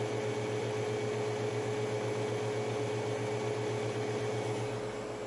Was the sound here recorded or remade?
recorded